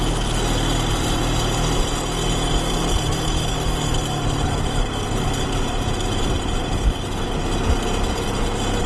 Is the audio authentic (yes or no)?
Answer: yes